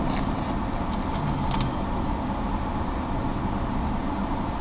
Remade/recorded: recorded